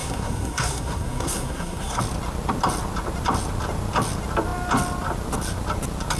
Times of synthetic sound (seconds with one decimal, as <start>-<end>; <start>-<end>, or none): 0.0-2.0